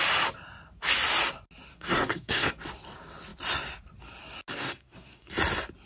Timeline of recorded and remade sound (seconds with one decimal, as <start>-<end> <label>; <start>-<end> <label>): 0.0-1.7 recorded; 1.7-2.5 remade; 2.5-4.5 recorded; 4.5-5.3 remade; 5.3-5.9 recorded